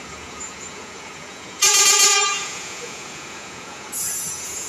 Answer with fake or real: fake